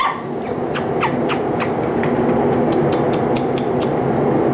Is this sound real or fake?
real